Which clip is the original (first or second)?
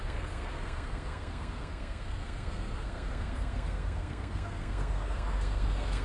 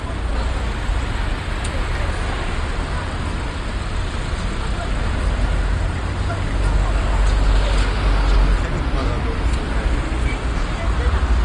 second